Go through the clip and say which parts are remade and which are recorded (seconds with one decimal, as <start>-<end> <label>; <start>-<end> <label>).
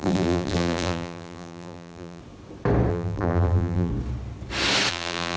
0.0-2.2 remade; 2.2-2.9 recorded; 2.9-3.9 remade; 3.9-4.9 recorded; 4.9-5.4 remade